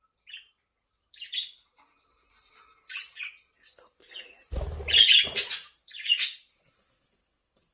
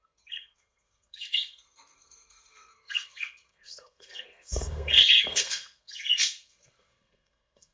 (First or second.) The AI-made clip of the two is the second